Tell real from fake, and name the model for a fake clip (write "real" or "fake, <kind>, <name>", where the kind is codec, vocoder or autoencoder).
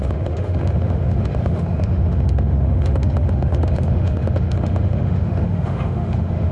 fake, autoencoder, DAC-VAE